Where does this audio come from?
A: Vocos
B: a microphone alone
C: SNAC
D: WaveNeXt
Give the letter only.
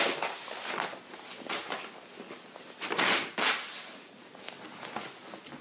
B